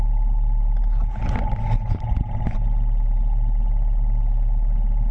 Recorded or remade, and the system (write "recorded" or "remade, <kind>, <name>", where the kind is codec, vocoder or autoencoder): recorded